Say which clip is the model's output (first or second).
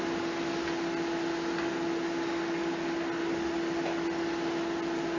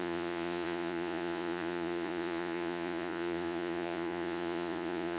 second